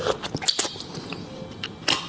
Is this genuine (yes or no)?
yes